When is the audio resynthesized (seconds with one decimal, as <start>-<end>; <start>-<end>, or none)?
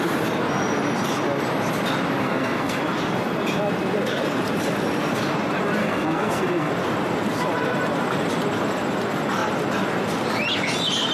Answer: 2.2-2.8; 5.8-6.7